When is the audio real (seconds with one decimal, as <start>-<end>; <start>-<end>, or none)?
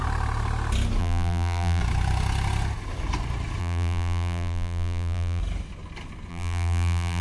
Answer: 0.0-1.0; 1.8-3.6; 5.4-6.3